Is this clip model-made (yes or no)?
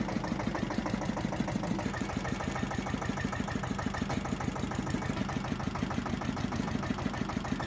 no